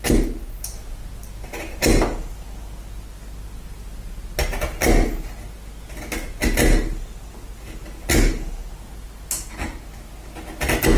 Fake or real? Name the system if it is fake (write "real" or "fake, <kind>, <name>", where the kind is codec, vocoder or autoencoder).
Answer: real